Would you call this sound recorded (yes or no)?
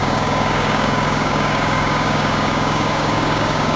no